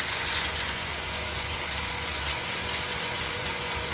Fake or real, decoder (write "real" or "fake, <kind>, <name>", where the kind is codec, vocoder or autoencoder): fake, vocoder, Vocos